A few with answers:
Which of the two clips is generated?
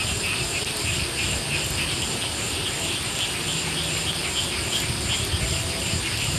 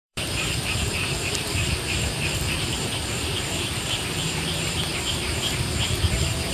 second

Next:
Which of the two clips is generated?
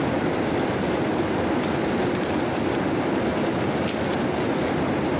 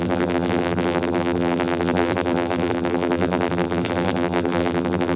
second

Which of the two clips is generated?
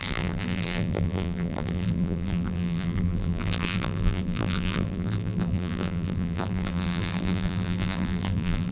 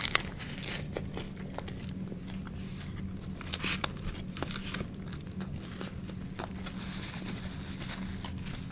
first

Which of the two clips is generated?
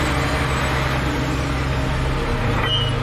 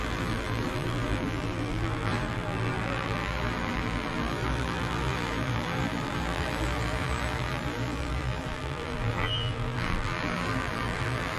second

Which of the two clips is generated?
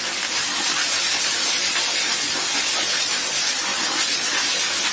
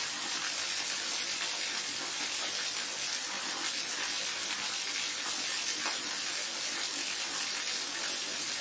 first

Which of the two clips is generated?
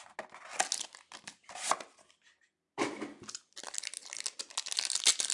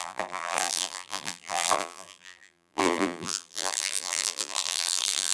second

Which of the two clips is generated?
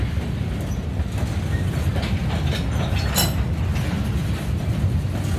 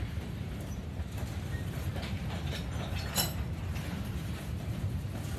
second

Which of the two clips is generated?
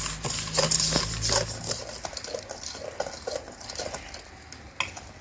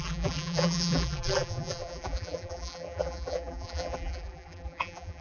second